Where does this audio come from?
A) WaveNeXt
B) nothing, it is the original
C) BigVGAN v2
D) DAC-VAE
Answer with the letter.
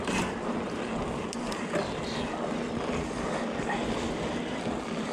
B